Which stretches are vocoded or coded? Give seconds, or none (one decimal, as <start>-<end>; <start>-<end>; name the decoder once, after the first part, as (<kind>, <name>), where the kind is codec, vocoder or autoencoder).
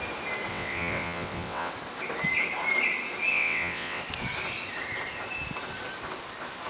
0.5-1.7 (vocoder, WaveNeXt); 3.3-4.0